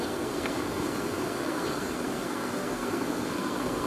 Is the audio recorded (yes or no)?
no